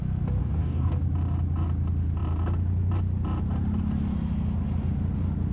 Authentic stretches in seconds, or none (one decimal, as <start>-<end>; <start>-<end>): 0.0-0.4; 0.9-5.5